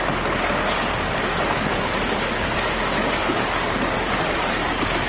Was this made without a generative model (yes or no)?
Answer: no